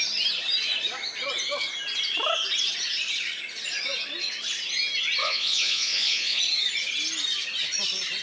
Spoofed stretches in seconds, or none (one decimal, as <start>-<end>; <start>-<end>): 5.2-6.4